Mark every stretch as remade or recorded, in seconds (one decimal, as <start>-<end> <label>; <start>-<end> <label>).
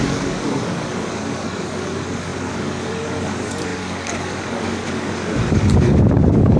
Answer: 0.0-6.6 remade